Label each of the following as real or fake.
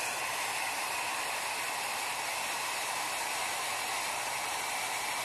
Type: real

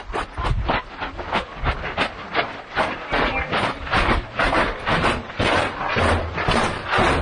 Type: real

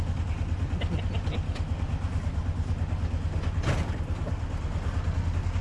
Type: real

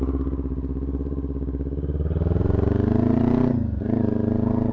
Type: real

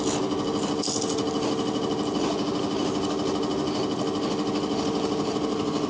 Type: real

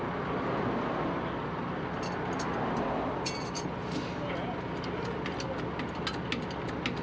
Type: real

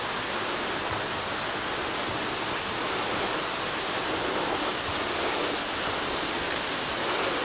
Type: real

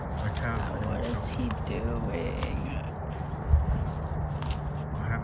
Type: real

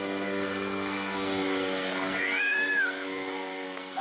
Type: fake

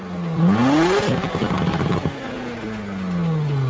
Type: real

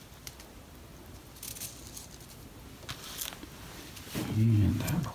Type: real